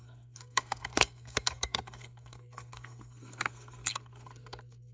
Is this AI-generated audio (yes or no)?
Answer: yes